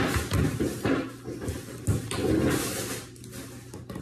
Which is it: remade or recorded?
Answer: recorded